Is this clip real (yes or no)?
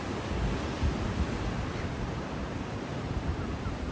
yes